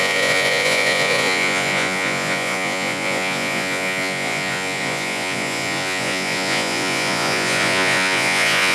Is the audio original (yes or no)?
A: no